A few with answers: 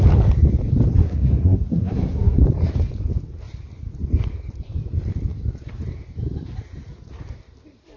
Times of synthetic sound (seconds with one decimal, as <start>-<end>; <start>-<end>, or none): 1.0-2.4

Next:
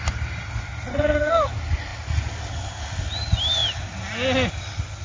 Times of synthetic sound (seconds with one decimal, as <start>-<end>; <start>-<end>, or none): 0.9-1.5

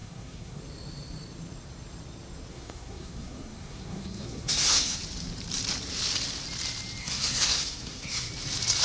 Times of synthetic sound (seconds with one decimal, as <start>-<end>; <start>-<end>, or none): 0.0-0.6; 2.5-5.0; 7.0-8.3

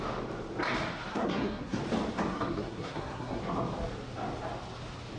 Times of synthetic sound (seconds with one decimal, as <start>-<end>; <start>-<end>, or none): 1.1-1.8; 2.3-3.4

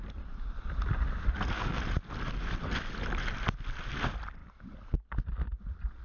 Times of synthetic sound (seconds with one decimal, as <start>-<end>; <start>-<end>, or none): 1.2-1.8